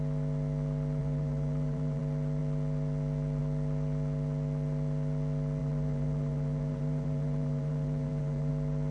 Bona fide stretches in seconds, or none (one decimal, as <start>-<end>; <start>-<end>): 0.0-1.0; 2.0-5.6; 8.5-8.9

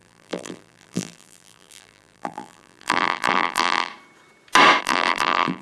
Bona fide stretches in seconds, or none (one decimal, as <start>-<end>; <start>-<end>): 3.9-4.8